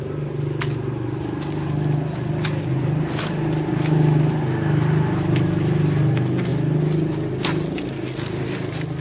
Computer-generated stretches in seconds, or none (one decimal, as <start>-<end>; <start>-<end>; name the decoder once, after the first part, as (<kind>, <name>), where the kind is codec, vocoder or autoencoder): none